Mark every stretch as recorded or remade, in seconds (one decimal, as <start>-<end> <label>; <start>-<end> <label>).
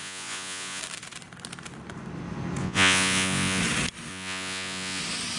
0.0-0.8 remade; 0.8-2.6 recorded; 2.6-3.6 remade; 3.6-4.1 recorded; 4.1-5.0 remade; 5.0-5.4 recorded